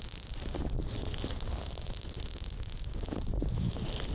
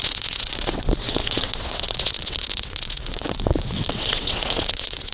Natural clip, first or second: first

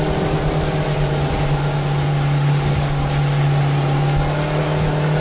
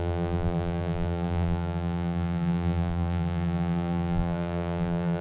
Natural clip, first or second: first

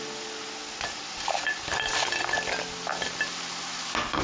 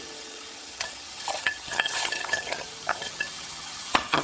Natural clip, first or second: first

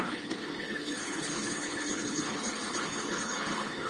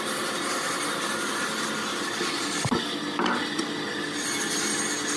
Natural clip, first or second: second